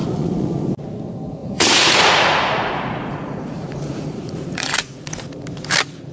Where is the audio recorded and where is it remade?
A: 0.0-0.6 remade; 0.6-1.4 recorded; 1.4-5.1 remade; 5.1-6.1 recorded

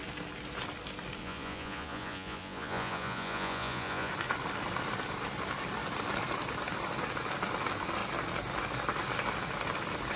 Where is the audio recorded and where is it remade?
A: 0.0-1.2 recorded; 1.2-4.1 remade; 4.1-10.2 recorded

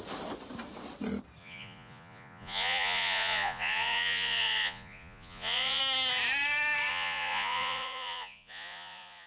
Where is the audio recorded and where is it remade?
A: 0.0-1.4 recorded; 1.4-5.8 remade; 5.8-6.9 recorded; 6.9-9.3 remade

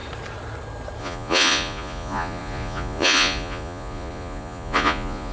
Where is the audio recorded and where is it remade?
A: 0.0-1.0 recorded; 1.0-5.3 remade

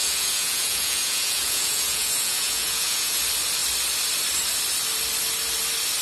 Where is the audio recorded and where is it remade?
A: 0.0-3.2 remade; 3.2-6.0 recorded

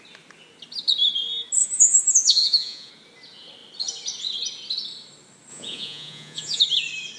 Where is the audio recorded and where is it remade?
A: 0.0-1.6 recorded; 1.6-2.9 remade; 2.9-5.5 recorded; 5.5-6.6 remade; 6.6-7.2 recorded

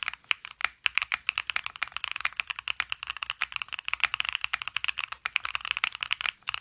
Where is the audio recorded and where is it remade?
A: 0.0-6.6 recorded

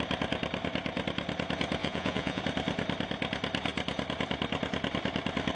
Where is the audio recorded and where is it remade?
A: 0.0-1.8 recorded; 1.8-2.4 remade; 2.4-5.5 recorded